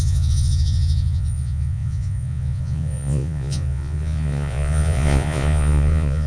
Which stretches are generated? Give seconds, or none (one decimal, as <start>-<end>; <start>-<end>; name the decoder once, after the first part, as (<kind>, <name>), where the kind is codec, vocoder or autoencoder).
0.0-6.3 (vocoder, Vocos)